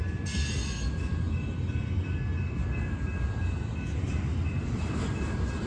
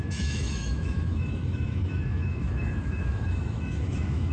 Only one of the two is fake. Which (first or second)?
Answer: second